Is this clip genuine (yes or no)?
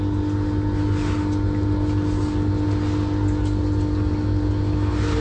yes